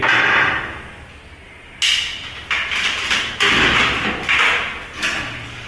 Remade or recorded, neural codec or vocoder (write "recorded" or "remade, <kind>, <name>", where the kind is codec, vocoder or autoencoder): recorded